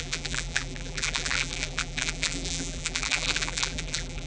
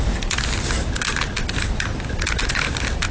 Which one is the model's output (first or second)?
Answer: first